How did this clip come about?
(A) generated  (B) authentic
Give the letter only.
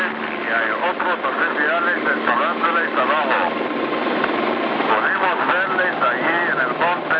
B